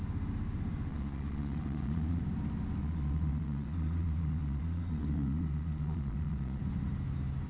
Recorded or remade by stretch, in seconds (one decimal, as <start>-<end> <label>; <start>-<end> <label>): 0.0-0.9 recorded; 0.9-2.2 remade; 2.2-2.8 recorded; 2.8-6.6 remade; 6.6-7.5 recorded